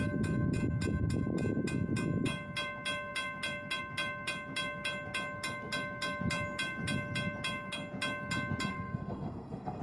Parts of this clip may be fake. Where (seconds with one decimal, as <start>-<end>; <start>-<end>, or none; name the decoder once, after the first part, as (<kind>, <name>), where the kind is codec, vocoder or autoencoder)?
8.7-9.8 (codec, SNAC)

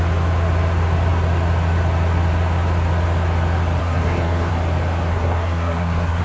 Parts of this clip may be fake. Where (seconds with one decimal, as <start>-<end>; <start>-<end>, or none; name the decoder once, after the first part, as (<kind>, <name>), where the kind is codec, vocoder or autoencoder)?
3.8-4.5 (codec, SNAC); 5.1-6.2

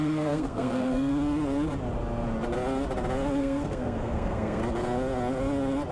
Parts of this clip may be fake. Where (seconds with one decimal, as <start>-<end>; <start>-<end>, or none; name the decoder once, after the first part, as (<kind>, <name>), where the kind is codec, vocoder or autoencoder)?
0.0-1.1 (codec, SNAC); 3.4-4.6

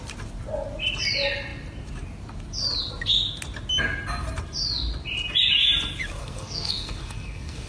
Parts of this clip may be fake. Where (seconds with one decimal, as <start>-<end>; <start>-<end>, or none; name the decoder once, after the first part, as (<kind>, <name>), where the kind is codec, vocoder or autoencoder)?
6.2-7.7 (codec, SNAC)